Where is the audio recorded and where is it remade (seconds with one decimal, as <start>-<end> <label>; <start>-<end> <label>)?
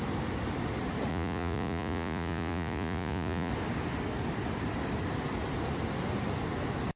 0.0-1.1 recorded; 1.1-3.5 remade; 3.5-7.0 recorded